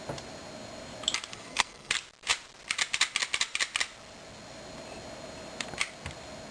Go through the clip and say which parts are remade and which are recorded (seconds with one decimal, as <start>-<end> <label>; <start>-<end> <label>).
0.0-1.3 recorded; 1.3-1.9 remade; 1.9-6.5 recorded